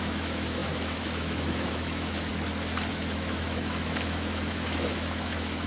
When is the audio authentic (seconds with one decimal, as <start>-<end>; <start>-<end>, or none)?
2.3-2.9